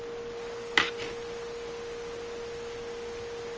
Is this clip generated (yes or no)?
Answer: no